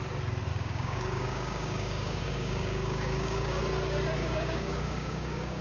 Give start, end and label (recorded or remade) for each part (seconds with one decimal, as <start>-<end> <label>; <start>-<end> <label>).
0.0-0.5 recorded; 0.5-3.6 remade; 3.6-4.2 recorded; 4.2-5.6 remade

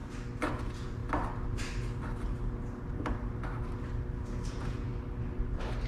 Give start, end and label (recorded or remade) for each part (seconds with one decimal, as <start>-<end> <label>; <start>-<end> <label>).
0.0-0.6 recorded; 0.6-1.0 remade; 1.0-4.5 recorded; 4.5-4.9 remade; 4.9-5.9 recorded